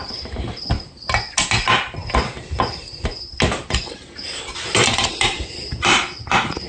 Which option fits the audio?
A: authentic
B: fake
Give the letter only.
A